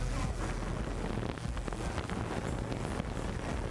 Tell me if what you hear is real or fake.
real